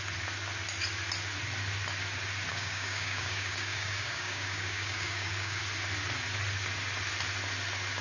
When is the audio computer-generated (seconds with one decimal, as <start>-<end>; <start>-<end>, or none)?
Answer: 2.5-5.6